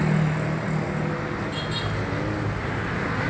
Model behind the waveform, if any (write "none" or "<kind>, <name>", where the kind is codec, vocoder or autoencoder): none